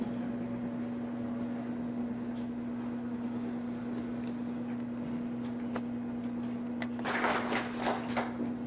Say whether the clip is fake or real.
real